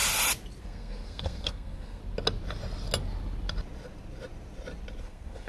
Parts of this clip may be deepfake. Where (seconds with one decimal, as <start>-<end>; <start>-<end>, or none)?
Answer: 0.6-2.0; 5.0-5.5